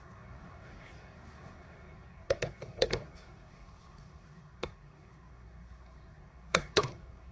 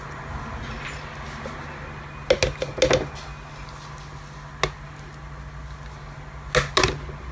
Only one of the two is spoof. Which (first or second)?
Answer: first